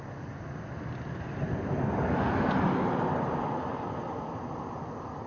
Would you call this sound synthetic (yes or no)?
no